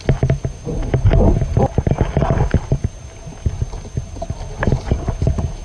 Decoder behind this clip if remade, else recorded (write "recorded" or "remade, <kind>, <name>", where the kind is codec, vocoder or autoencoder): recorded